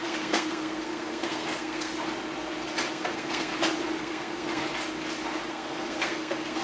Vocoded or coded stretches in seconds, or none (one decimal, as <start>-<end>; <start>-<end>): 0.0-1.9; 2.9-3.5; 4.0-4.6; 5.5-6.6